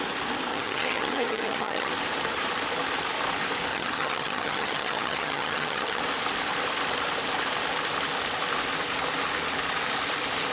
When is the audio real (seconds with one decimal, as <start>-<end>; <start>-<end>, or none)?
0.0-0.5; 1.9-3.7; 6.0-10.5